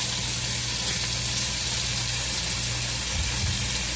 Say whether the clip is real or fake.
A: real